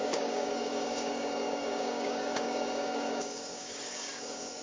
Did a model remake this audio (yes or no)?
yes